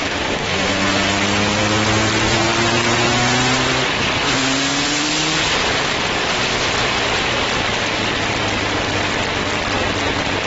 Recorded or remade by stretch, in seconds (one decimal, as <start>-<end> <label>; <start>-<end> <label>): 0.0-0.8 remade; 0.8-10.5 recorded